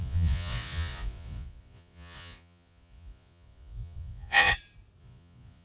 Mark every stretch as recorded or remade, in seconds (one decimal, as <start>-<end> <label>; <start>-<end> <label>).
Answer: 0.0-4.5 remade; 4.5-5.0 recorded; 5.0-5.6 remade